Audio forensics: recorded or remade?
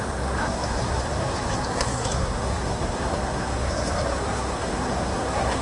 remade